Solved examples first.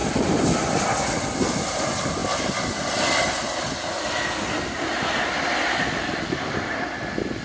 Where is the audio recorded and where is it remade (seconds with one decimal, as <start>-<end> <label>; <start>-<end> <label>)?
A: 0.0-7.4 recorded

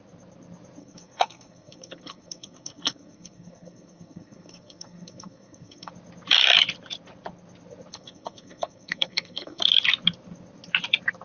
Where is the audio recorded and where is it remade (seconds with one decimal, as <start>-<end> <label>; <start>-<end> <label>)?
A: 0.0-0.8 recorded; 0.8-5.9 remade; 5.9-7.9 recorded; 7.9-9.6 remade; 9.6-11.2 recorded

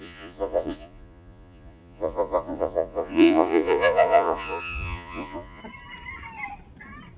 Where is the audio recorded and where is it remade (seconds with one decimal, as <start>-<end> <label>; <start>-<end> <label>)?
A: 0.0-5.6 remade; 5.6-7.2 recorded

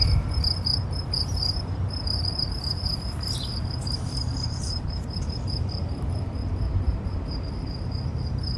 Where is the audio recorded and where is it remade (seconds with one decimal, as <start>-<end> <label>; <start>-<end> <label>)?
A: 0.0-8.6 remade

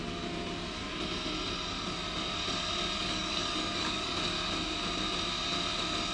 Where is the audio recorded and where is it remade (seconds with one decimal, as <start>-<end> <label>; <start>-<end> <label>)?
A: 0.0-3.0 recorded; 3.0-4.1 remade; 4.1-6.1 recorded

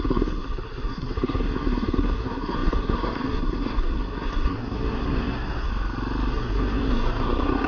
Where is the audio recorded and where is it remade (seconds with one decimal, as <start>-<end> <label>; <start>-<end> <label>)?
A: 0.0-5.7 remade; 5.7-6.3 recorded; 6.3-7.7 remade